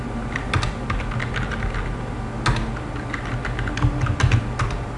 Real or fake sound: real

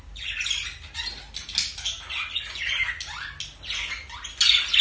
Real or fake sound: real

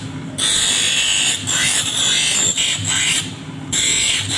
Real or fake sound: fake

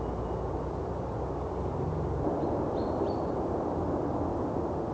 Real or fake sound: real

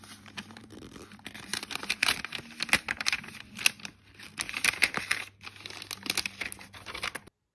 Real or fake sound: real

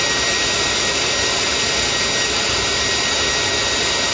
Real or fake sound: real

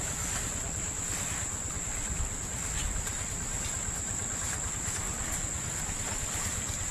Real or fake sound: real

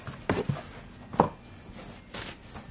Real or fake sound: real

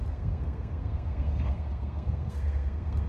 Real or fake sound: fake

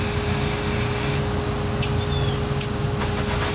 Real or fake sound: real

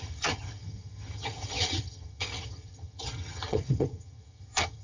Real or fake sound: fake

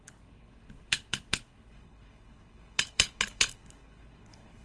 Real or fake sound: fake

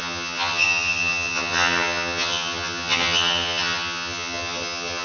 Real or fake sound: fake